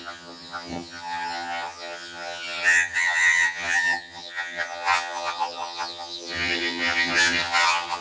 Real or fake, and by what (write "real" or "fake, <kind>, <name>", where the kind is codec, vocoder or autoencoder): fake, vocoder, HiFi-GAN